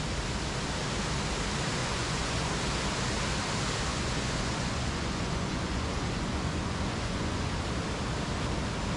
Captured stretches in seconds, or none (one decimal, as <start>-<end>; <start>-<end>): 0.0-1.8; 2.5-3.9; 7.5-9.0